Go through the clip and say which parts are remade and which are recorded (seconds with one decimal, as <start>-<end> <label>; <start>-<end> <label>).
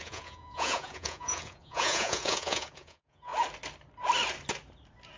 0.0-3.3 remade; 3.3-5.2 recorded